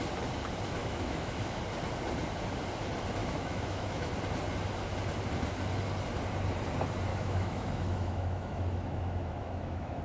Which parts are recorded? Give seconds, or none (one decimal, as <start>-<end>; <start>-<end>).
0.0-0.8; 1.6-3.2; 4.1-7.1

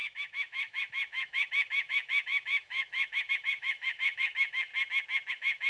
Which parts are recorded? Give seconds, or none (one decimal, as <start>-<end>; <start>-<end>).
4.7-5.3